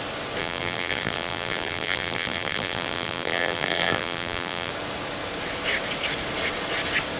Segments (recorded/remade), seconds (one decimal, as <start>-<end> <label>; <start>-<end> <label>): 0.0-0.4 recorded; 0.4-4.7 remade; 4.7-7.2 recorded